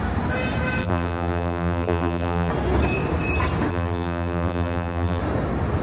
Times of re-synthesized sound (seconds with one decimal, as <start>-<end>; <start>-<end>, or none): 0.8-2.5; 3.7-5.2

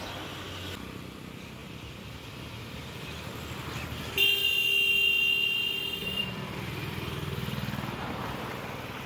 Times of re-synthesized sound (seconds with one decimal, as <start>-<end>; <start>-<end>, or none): 1.6-4.5; 6.0-8.4

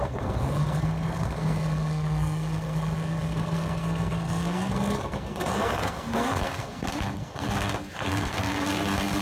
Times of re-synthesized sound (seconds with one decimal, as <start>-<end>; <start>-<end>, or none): 0.0-9.2

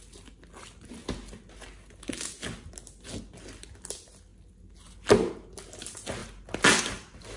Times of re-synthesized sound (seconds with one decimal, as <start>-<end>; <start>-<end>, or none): none